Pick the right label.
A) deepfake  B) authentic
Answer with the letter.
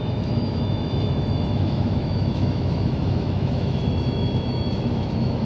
A